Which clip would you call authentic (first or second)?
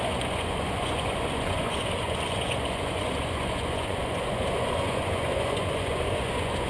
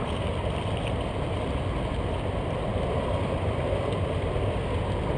second